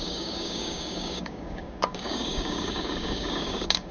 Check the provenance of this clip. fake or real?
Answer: fake